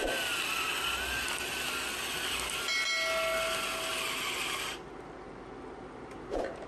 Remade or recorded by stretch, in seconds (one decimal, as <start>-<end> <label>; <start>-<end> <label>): 0.0-6.7 recorded